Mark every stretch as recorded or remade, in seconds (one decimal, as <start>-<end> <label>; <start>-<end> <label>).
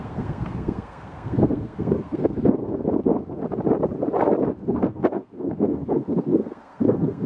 0.0-3.4 remade; 3.4-4.5 recorded; 4.5-7.3 remade